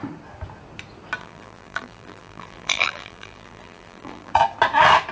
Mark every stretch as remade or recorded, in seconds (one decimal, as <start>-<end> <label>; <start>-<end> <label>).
0.0-1.2 recorded; 1.2-4.3 remade; 4.3-5.1 recorded